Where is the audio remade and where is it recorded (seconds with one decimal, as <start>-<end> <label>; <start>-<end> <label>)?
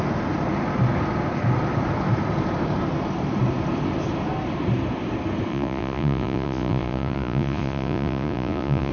0.0-5.5 recorded; 5.5-8.9 remade